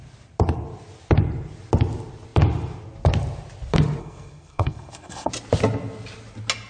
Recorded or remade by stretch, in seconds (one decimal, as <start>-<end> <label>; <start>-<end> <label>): 0.0-4.0 recorded; 4.0-5.3 remade; 5.3-6.7 recorded